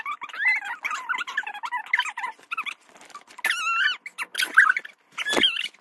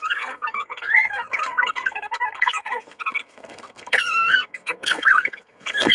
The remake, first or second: second